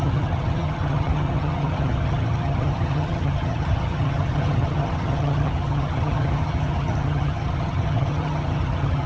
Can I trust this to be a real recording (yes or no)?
no